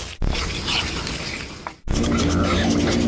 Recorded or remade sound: recorded